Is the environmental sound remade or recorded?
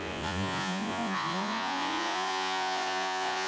remade